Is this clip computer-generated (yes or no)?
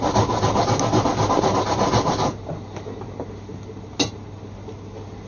no